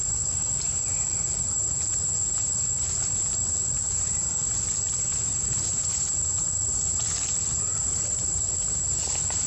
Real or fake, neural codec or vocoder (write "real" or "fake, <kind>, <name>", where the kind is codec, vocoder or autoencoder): real